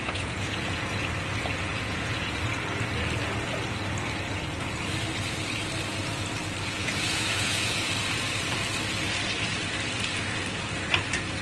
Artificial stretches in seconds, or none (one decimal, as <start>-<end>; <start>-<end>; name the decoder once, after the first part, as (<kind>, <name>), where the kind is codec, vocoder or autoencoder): 0.0-1.1 (vocoder, Vocos); 1.7-2.4; 6.8-7.9